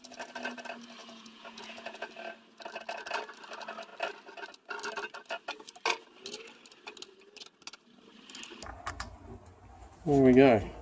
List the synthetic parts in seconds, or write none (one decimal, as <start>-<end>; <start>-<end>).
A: 1.0-2.1